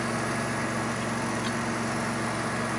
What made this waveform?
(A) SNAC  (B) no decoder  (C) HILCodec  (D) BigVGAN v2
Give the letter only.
B